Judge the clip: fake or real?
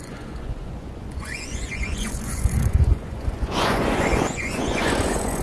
fake